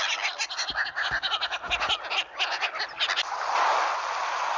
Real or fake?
real